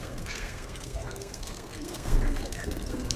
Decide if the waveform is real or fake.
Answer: fake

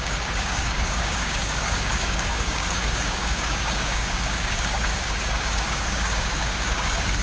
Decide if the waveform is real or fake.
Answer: fake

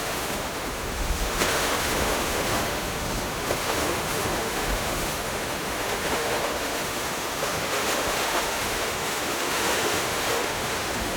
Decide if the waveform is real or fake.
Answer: fake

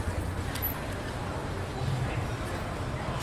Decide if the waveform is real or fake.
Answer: real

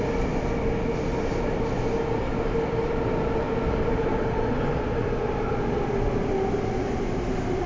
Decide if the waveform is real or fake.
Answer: real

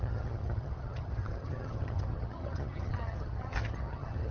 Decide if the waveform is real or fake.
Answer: fake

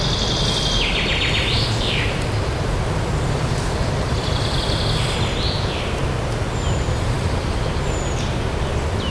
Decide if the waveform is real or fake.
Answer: real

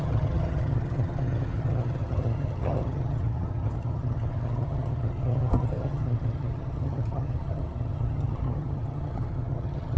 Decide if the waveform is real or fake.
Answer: fake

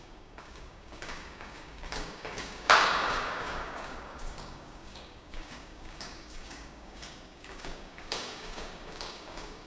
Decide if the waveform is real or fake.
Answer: fake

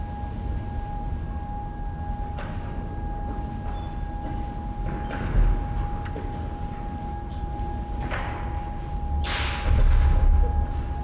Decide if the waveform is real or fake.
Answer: real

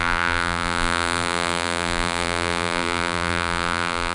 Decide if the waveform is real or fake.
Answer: fake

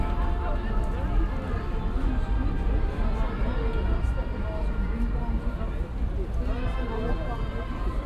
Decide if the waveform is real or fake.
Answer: real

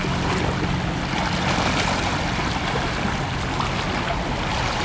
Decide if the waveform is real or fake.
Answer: real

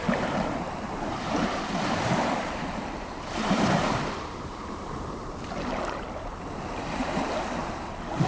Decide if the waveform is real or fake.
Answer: fake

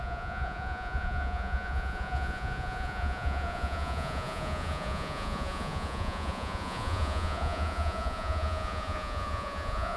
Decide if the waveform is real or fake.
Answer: fake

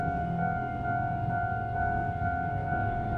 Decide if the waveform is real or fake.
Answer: fake